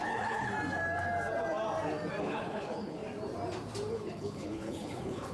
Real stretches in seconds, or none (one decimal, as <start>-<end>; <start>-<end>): 0.5-2.2; 3.0-3.9